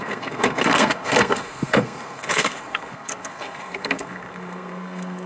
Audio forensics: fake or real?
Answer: fake